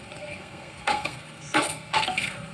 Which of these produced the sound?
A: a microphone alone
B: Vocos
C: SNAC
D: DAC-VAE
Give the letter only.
C